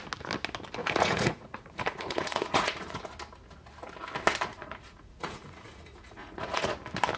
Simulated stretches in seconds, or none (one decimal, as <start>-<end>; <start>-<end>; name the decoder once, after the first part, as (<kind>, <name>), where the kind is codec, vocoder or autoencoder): 0.8-3.0 (vocoder, Vocos); 4.5-6.7